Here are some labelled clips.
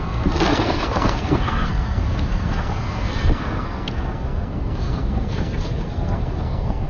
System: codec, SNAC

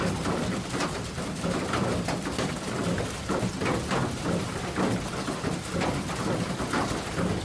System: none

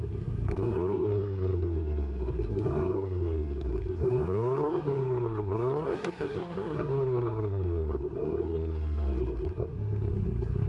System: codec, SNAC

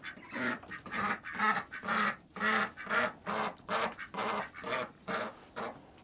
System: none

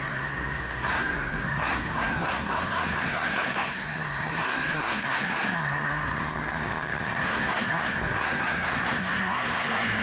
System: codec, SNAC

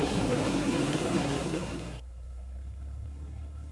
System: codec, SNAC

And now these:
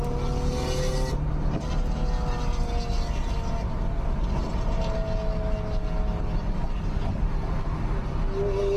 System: none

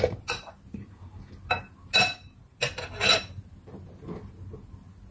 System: none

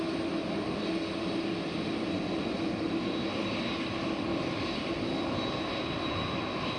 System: none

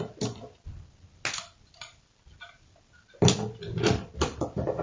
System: none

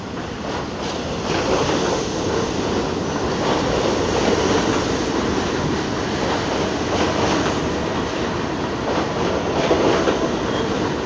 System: none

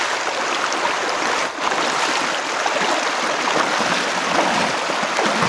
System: none